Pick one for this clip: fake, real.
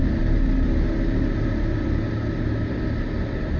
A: real